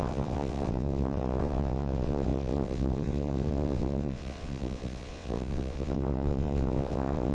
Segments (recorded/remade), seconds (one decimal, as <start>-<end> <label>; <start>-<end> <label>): 0.0-7.3 remade